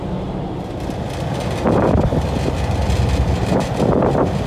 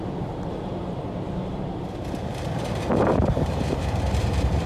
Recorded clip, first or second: first